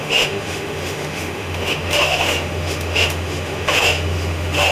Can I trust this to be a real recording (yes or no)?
no